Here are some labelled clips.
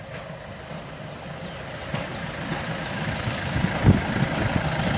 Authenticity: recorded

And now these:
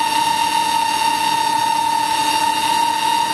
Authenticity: recorded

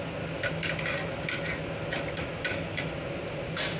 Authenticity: recorded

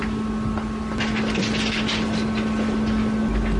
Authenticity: recorded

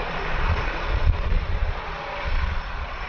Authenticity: remade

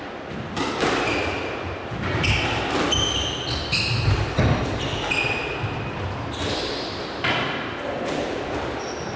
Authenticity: recorded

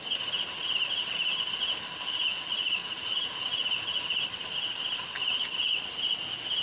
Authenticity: recorded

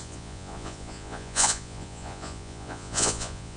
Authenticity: remade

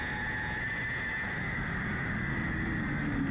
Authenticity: recorded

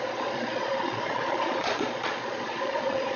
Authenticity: remade